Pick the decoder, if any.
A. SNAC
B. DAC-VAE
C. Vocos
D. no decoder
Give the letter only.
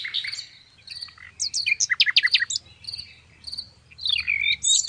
D